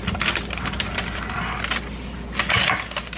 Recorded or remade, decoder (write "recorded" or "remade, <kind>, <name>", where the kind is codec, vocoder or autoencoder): recorded